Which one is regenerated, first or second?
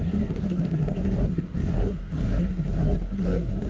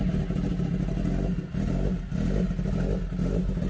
first